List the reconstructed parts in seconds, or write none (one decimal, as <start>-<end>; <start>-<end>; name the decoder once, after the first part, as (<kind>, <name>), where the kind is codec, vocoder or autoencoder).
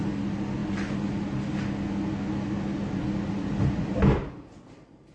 none